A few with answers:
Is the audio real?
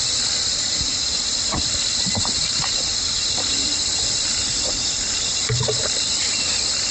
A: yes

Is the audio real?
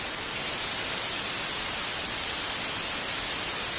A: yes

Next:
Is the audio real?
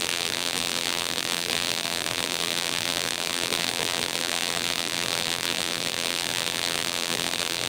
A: no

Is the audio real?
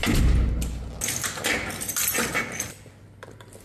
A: yes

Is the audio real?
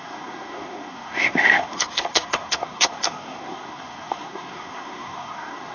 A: no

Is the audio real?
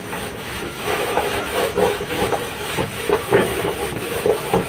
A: no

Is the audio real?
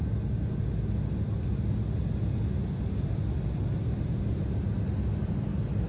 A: yes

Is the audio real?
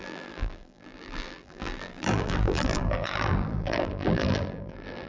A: no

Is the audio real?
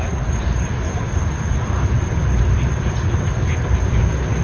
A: no